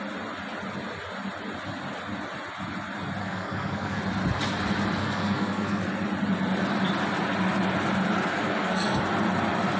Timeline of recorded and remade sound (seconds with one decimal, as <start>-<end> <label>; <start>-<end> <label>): 0.0-3.2 recorded; 3.2-4.0 remade; 4.0-5.0 recorded; 5.0-5.8 remade; 5.8-8.3 recorded; 8.3-9.0 remade; 9.0-9.8 recorded